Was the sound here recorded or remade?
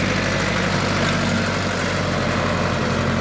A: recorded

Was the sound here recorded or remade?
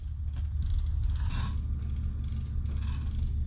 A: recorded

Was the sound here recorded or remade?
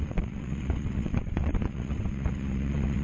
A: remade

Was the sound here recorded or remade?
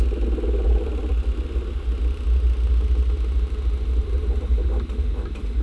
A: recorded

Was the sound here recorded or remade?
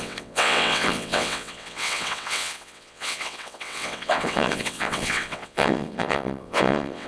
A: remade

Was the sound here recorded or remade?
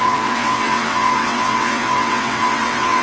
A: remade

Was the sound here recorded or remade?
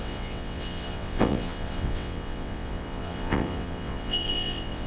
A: remade